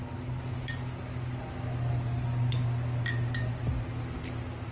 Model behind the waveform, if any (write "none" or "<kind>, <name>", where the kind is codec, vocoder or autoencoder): none